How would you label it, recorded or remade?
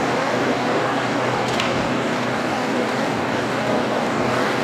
remade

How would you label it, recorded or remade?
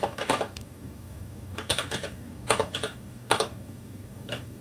remade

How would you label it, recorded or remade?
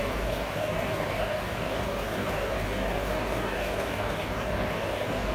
remade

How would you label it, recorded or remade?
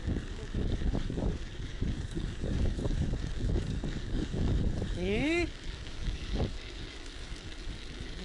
remade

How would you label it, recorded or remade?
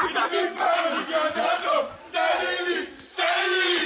recorded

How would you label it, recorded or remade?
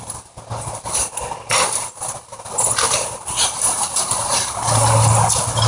recorded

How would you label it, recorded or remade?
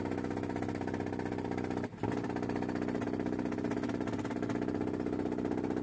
recorded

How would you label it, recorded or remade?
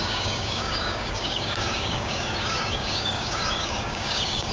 remade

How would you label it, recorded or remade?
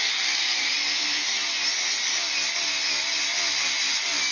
recorded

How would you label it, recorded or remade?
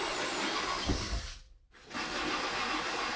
recorded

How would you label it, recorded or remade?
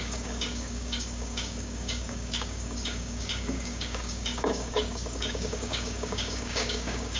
remade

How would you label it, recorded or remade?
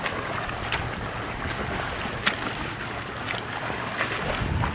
recorded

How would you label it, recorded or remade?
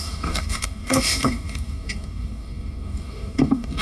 remade